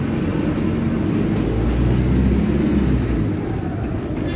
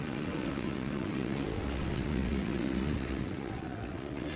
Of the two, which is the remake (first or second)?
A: second